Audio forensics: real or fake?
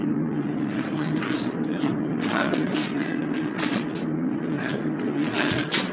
fake